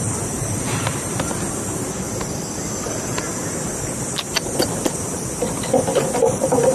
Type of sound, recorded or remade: recorded